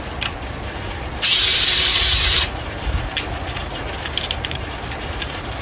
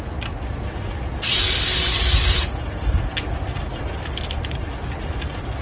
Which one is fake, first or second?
first